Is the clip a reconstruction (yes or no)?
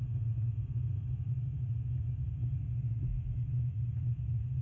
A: no